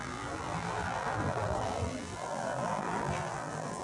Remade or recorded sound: remade